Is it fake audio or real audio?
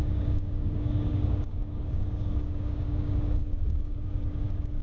fake